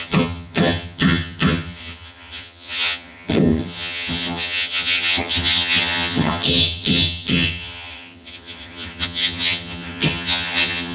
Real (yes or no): no